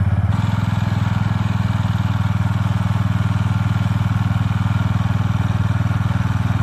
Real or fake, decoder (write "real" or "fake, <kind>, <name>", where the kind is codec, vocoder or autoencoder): real